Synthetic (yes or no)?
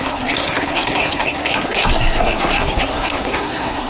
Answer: yes